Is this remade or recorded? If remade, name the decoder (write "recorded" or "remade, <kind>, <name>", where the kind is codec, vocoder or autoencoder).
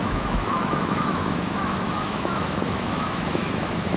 remade, autoencoder, DAC-VAE